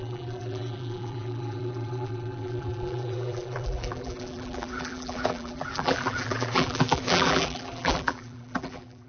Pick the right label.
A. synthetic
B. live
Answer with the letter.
A